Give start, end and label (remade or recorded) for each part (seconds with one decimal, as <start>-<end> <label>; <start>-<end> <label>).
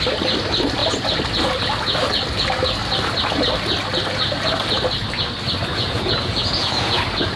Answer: 0.0-5.7 recorded; 5.7-7.0 remade; 7.0-7.4 recorded